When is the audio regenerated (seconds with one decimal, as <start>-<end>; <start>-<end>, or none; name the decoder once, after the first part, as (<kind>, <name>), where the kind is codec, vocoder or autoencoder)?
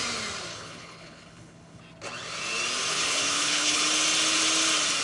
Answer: 0.5-1.8 (codec, HILCodec); 2.9-3.8